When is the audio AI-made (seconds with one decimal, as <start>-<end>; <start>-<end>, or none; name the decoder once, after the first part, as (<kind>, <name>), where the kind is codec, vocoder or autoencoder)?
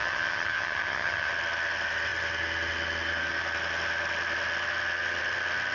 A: 0.0-1.3 (vocoder, HiFi-GAN)